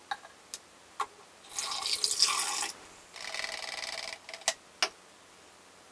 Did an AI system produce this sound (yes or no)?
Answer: no